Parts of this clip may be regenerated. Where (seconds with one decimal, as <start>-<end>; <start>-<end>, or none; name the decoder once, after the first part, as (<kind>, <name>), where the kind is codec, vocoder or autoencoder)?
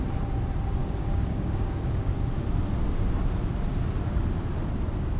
0.8-2.1 (codec, DAC)